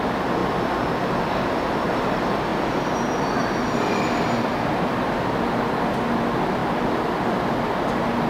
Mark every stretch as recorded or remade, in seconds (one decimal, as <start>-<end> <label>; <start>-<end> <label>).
0.0-0.4 recorded; 0.4-0.9 remade; 0.9-2.5 recorded; 2.5-5.1 remade; 5.1-6.6 recorded; 6.6-7.5 remade; 7.5-8.3 recorded